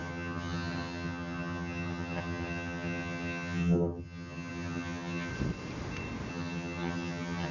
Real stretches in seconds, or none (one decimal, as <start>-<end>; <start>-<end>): 5.3-6.3